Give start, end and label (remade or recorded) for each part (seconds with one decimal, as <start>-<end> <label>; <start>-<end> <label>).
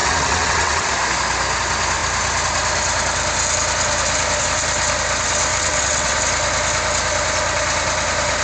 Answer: 0.0-0.9 remade; 0.9-5.5 recorded; 5.5-6.2 remade; 6.2-8.4 recorded